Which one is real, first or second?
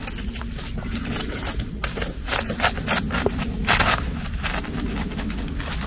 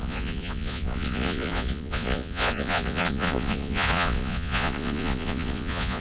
first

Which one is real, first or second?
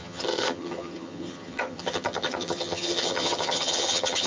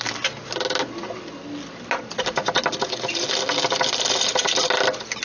second